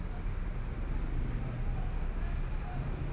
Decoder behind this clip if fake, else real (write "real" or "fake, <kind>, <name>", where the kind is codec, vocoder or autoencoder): real